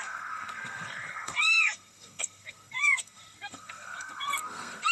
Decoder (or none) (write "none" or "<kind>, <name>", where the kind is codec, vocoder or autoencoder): codec, SNAC